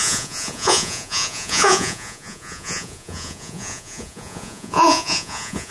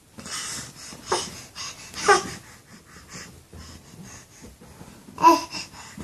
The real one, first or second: second